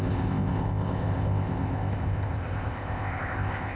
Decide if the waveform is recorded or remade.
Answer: remade